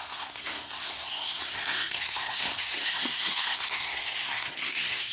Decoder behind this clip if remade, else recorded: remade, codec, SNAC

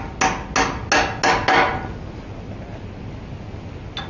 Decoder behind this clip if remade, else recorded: recorded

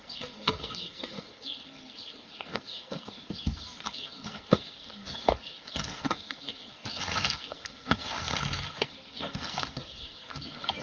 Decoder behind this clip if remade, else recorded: remade, codec, SNAC